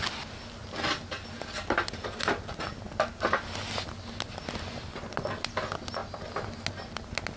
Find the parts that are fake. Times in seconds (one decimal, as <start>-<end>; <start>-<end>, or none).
0.6-1.1